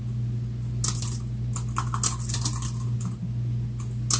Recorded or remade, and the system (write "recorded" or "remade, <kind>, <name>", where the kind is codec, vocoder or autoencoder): recorded